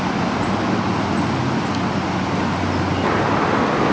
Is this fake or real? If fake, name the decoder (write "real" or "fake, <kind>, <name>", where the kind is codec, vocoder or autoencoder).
real